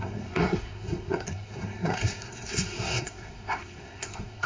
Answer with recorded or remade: remade